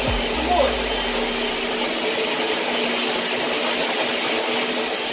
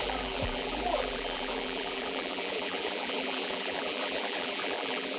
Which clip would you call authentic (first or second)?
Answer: first